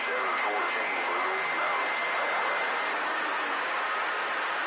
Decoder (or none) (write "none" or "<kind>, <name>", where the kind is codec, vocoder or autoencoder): none